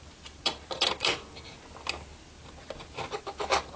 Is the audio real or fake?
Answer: real